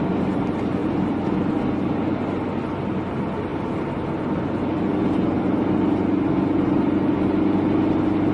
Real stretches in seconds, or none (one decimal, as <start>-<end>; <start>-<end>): 0.0-8.3